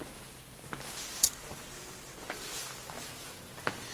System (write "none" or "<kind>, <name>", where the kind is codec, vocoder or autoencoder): none